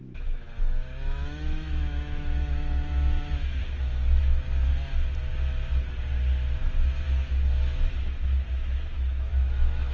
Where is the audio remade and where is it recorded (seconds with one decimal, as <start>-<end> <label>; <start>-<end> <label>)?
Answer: 0.0-3.6 remade; 3.6-4.2 recorded; 4.2-4.7 remade; 4.7-8.5 recorded; 8.5-9.9 remade